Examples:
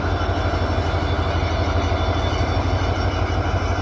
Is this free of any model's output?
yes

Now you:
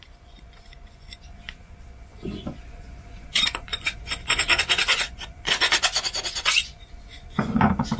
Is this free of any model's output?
no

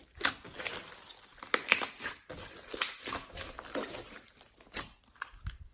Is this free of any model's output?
yes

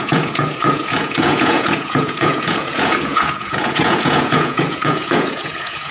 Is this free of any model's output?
no